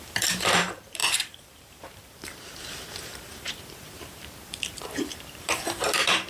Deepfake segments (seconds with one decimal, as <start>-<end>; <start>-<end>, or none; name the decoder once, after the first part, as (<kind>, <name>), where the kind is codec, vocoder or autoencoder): 0.0-6.3 (vocoder, BigVGAN v2)